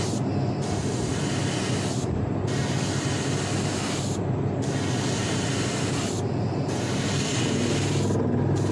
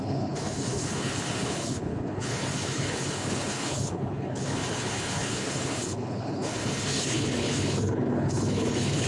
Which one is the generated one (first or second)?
second